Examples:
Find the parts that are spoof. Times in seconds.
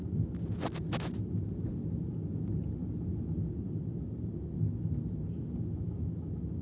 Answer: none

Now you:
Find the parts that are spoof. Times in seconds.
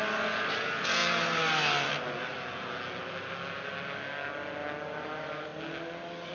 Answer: none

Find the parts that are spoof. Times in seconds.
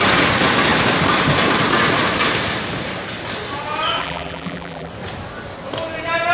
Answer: 4.0-4.9 (vocoder, BigVGAN v2)